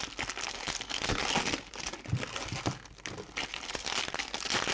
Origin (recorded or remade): recorded